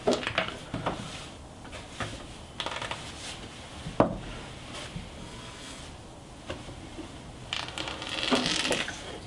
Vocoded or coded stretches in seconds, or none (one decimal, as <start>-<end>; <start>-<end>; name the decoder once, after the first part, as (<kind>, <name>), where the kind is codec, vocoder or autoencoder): 5.2-5.8 (codec, SNAC)